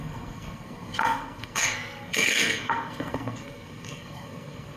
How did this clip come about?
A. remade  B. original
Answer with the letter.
A